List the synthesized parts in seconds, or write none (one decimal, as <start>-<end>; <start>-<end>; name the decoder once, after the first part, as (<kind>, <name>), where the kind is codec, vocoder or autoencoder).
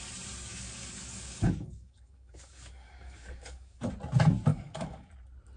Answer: 0.5-3.9 (codec, DAC); 4.5-5.1